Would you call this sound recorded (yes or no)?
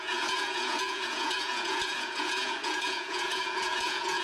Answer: no